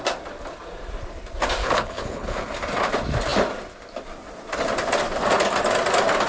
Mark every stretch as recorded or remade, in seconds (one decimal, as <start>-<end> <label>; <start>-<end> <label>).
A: 0.0-1.6 recorded; 1.6-2.5 remade; 2.5-6.3 recorded